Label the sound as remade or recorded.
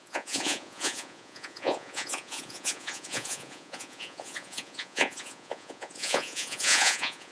remade